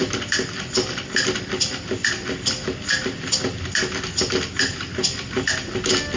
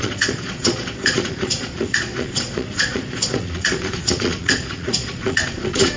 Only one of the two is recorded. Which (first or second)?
first